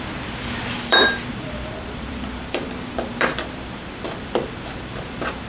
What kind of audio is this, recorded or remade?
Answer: remade